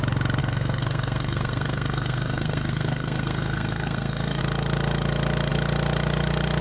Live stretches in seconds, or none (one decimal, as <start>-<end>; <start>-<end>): 0.0-0.4; 4.4-6.6